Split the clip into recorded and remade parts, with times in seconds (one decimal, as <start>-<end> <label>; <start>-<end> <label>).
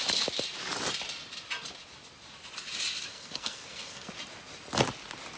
0.0-3.1 recorded; 3.1-4.1 remade; 4.1-5.4 recorded